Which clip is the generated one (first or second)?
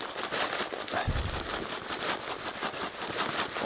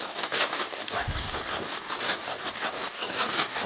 second